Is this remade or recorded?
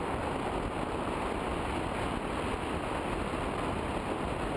recorded